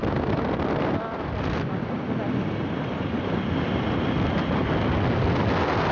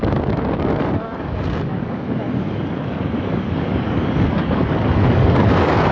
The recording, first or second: first